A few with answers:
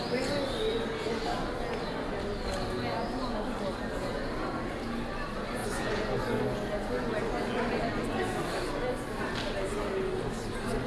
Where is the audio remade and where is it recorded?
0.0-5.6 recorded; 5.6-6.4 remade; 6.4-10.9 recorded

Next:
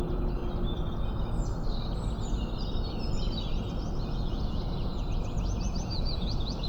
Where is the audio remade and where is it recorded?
0.0-0.4 remade; 0.4-4.3 recorded; 4.3-4.9 remade; 4.9-5.4 recorded; 5.4-6.7 remade

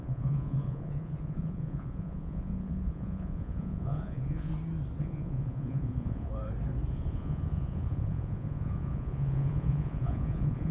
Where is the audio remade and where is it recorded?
0.0-4.5 remade; 4.5-5.0 recorded; 5.0-6.3 remade; 6.3-6.9 recorded; 6.9-10.7 remade

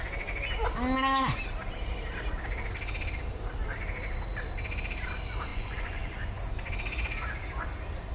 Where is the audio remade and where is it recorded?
0.0-5.5 recorded; 5.5-6.3 remade; 6.3-8.1 recorded

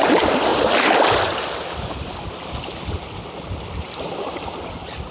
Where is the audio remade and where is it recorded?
0.0-5.1 recorded

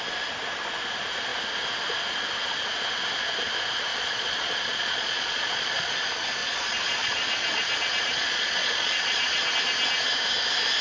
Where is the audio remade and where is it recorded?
0.0-3.9 recorded; 3.9-5.9 remade; 5.9-6.4 recorded; 6.4-9.5 remade; 9.5-10.8 recorded

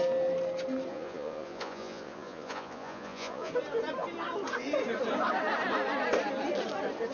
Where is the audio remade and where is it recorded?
0.0-0.9 recorded; 0.9-3.5 remade; 3.5-7.1 recorded